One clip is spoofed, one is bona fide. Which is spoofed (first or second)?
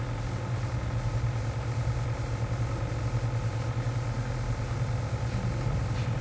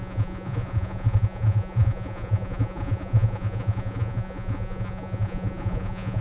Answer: second